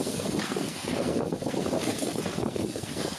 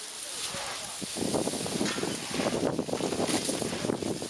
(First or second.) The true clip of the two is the second